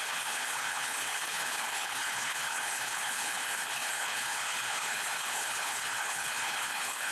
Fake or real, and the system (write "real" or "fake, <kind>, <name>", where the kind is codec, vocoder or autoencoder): fake, codec, HILCodec